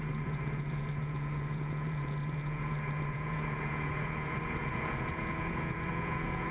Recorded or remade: remade